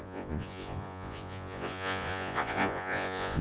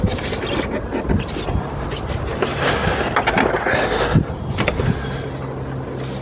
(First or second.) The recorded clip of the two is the second